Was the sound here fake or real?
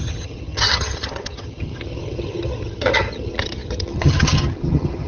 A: fake